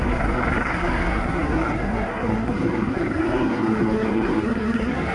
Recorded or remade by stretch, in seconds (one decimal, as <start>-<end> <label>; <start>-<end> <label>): 0.0-5.1 remade